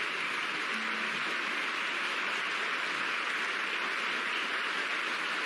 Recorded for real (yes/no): yes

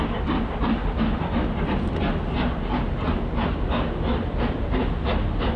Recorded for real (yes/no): yes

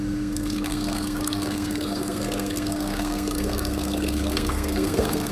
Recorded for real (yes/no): no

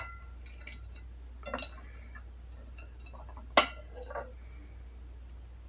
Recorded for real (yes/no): yes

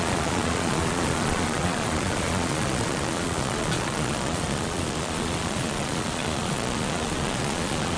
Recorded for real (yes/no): no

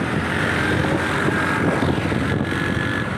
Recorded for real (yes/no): yes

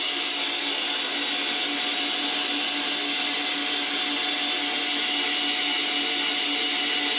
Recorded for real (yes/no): yes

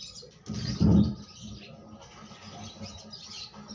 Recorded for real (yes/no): yes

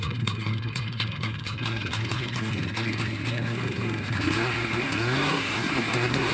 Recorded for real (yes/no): no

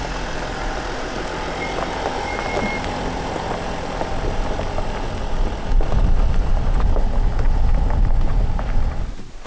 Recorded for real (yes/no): yes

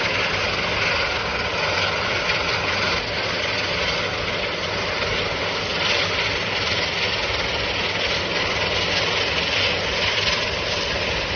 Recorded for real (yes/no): yes